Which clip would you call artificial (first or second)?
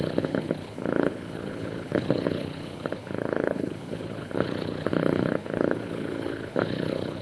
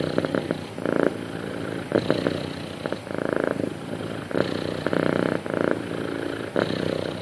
first